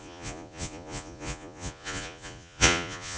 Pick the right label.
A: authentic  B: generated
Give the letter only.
B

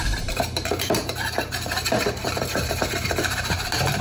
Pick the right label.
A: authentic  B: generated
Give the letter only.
B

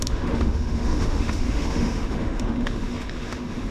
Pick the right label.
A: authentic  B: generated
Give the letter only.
B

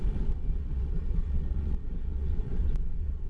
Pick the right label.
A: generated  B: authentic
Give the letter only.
A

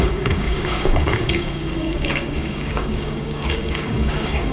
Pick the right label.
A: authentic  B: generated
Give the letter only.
B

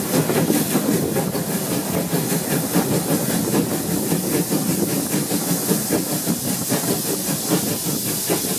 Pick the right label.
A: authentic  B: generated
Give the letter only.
A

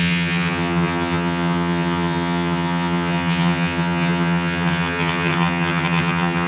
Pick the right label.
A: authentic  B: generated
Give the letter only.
B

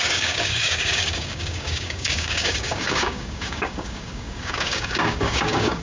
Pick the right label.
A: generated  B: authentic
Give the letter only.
A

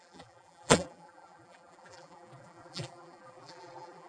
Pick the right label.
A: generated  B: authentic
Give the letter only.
A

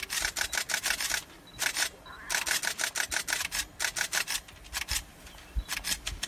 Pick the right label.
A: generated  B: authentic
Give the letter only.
B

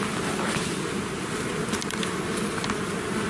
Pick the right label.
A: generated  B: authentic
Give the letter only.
B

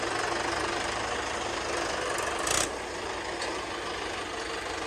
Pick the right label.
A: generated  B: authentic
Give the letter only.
B